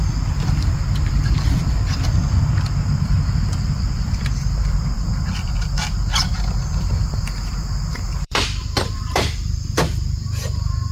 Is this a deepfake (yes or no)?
yes